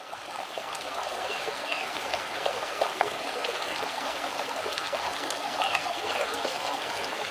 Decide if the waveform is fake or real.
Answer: fake